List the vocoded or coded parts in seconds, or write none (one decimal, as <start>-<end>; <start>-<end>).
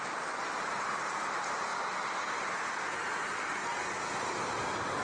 none